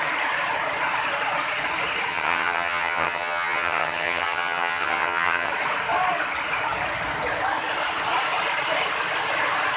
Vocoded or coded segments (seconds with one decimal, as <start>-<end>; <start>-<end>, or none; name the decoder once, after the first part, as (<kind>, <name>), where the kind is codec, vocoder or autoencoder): 2.1-5.5 (vocoder, HiFi-GAN)